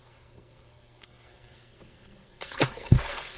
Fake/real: fake